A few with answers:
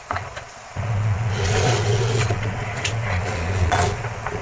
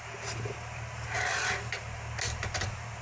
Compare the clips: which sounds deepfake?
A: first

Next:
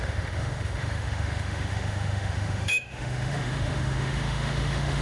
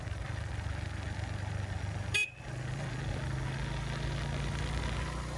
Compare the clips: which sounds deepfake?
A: first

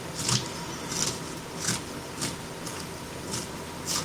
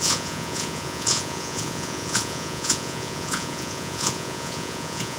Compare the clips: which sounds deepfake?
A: second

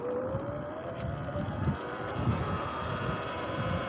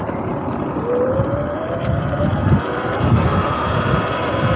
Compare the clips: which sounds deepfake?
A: second